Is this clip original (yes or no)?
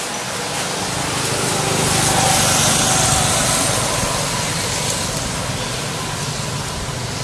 yes